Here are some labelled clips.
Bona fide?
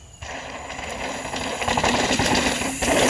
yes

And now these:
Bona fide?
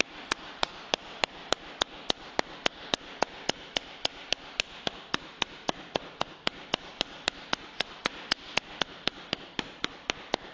yes